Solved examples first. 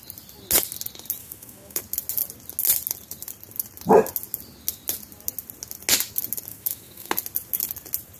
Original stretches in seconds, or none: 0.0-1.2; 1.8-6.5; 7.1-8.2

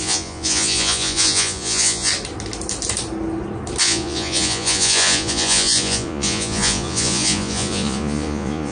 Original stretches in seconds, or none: 2.1-3.8

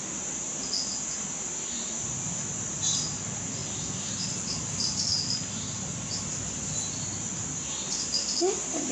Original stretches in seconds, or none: 0.0-3.6; 4.4-8.9

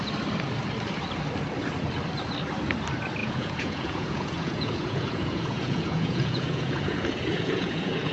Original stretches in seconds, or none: 0.0-3.2

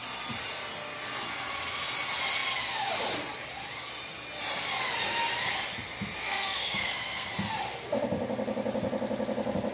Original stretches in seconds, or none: 0.0-6.2; 7.3-9.7

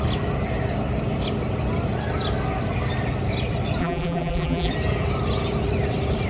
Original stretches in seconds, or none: 0.0-3.8; 4.7-6.3

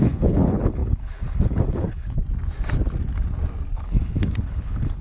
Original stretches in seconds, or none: 2.2-3.8